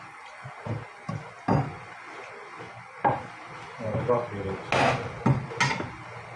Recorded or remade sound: recorded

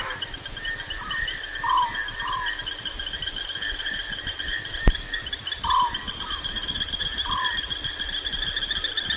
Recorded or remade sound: recorded